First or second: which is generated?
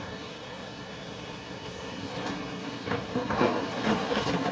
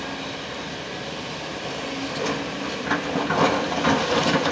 first